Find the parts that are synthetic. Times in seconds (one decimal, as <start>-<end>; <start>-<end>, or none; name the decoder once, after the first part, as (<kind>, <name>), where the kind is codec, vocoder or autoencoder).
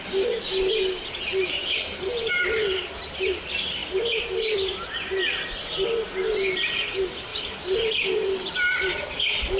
1.6-2.8 (vocoder, BigVGAN v2); 7.3-8.3